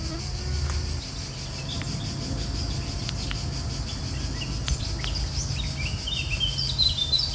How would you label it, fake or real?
real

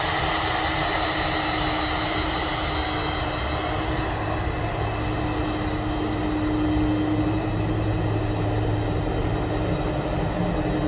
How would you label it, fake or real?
real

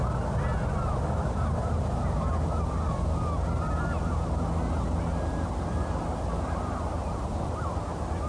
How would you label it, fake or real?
real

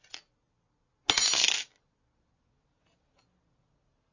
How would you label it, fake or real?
real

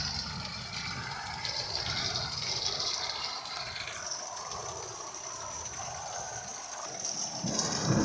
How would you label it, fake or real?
real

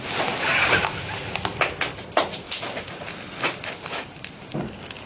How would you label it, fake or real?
real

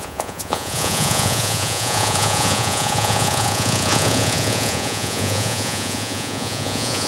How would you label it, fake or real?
fake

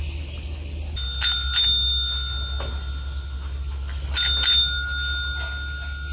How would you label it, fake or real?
real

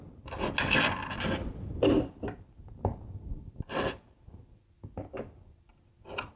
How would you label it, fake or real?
real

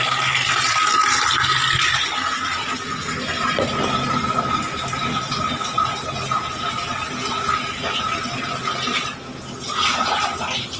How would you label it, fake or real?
real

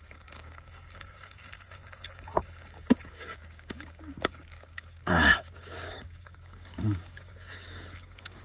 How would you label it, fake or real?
fake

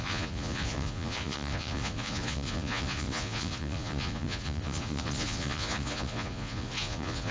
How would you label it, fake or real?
fake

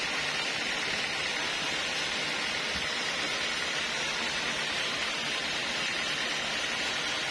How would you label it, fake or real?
real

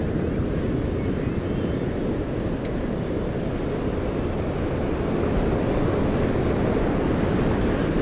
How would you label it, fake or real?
real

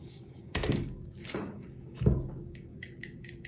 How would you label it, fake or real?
fake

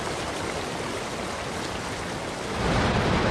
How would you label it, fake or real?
real